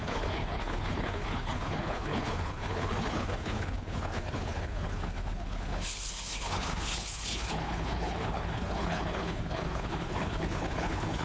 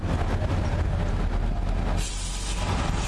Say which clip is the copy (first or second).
first